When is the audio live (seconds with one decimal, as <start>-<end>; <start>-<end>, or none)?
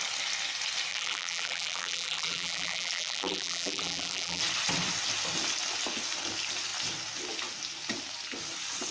0.0-0.9; 4.4-8.9